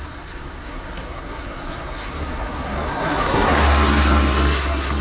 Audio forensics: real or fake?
fake